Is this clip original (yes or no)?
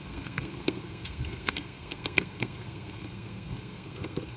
no